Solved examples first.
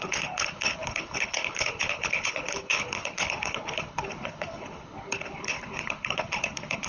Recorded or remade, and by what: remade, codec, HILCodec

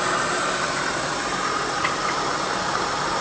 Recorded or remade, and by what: remade, vocoder, BigVGAN v2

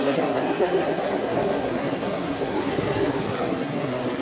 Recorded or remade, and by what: remade, codec, SNAC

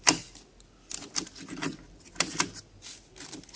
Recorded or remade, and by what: recorded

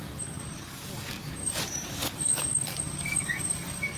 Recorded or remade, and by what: remade, codec, DAC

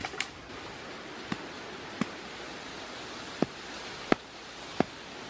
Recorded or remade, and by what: recorded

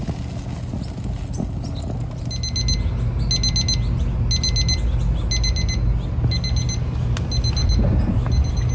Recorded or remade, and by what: recorded